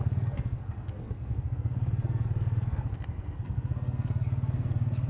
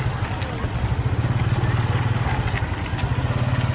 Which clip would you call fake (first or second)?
first